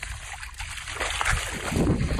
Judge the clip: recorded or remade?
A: remade